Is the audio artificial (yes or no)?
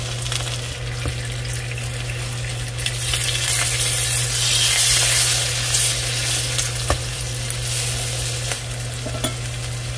no